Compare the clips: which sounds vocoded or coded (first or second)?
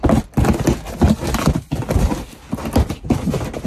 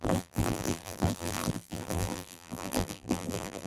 second